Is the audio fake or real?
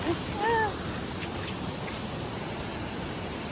real